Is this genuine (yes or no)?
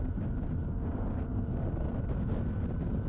yes